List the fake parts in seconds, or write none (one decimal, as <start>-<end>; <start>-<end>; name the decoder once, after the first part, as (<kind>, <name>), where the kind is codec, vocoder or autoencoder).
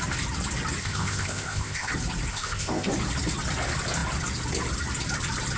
0.8-1.9 (codec, ZipCodec); 2.3-2.9